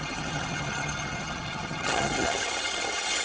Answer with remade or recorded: remade